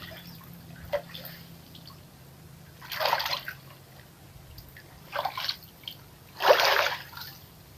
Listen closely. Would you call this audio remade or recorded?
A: recorded